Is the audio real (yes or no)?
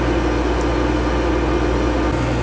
yes